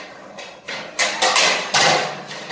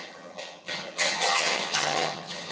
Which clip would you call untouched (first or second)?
first